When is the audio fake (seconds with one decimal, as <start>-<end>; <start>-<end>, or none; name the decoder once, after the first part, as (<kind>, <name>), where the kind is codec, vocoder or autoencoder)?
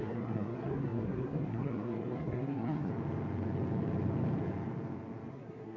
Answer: 0.0-2.9 (codec, SNAC); 5.3-5.8